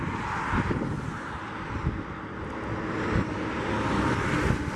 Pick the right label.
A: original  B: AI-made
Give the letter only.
A